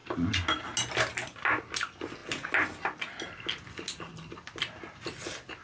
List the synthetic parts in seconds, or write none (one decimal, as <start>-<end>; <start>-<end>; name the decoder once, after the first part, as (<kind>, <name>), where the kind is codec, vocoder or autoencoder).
none